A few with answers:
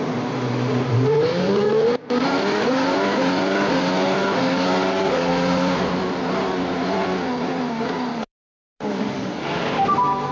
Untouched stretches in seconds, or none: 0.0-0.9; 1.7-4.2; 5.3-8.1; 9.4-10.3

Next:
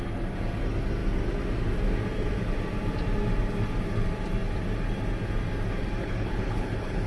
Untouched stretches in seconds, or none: 0.0-6.0

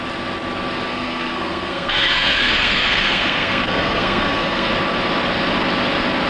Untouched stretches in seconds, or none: 0.0-0.9; 4.7-6.3

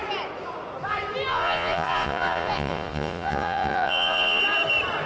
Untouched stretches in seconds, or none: 0.0-1.3; 4.4-5.1

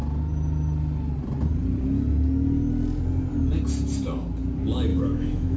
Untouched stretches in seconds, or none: 0.0-4.9